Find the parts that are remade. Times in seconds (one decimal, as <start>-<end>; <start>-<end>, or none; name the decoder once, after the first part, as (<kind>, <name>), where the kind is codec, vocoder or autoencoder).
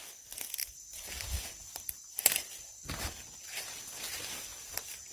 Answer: 1.6-2.9 (vocoder, BigVGAN v2); 4.5-5.1